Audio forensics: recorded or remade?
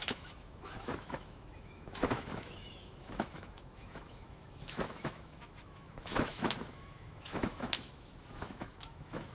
remade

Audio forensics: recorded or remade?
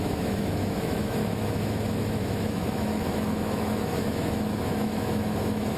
remade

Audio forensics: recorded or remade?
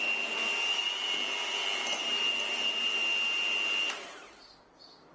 recorded